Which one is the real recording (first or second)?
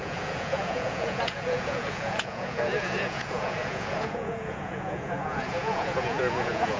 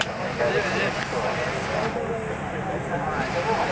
second